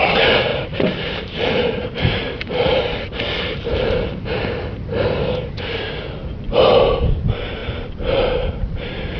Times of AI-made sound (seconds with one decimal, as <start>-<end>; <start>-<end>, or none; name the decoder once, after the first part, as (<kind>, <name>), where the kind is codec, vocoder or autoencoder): 0.5-4.5 (vocoder, BigVGAN v2); 7.6-8.5